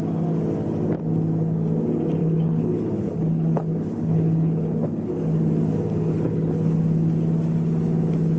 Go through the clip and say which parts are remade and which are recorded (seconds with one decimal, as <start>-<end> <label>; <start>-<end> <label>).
0.0-2.2 recorded; 2.2-5.1 remade; 5.1-6.1 recorded; 6.1-6.7 remade; 6.7-8.4 recorded